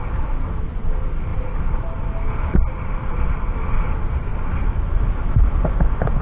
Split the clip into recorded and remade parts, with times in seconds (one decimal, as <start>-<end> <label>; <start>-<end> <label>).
0.0-6.2 recorded